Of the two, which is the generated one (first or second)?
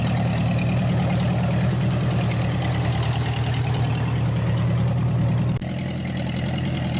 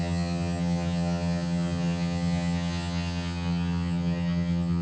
second